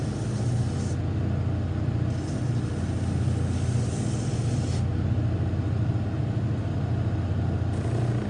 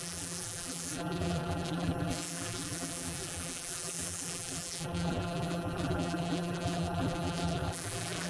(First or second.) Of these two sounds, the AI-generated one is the second